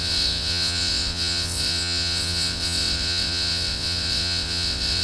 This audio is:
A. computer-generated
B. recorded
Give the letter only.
A